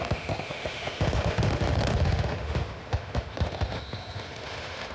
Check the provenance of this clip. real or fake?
fake